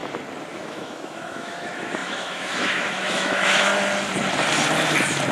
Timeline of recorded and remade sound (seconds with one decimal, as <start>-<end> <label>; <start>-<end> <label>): 0.0-0.5 recorded; 0.5-3.7 remade; 3.7-5.3 recorded